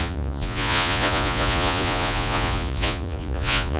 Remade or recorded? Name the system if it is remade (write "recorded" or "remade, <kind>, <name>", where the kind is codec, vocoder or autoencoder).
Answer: remade, vocoder, Vocos